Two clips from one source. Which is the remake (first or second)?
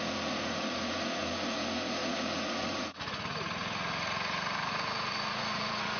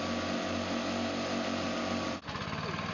first